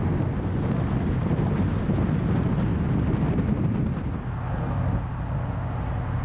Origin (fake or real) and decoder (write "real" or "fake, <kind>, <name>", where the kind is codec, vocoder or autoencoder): real